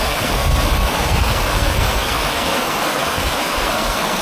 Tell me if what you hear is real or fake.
fake